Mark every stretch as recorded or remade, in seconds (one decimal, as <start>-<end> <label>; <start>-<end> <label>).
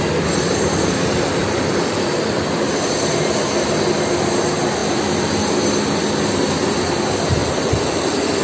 0.0-1.4 recorded; 1.4-2.4 remade; 2.4-7.4 recorded; 7.4-8.4 remade